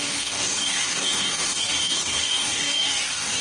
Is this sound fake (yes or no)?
yes